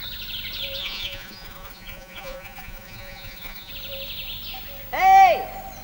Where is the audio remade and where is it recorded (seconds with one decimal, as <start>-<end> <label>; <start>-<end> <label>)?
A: 0.0-0.8 recorded; 0.8-3.7 remade; 3.7-5.8 recorded